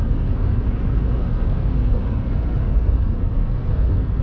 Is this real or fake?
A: fake